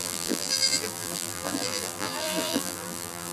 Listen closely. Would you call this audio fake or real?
fake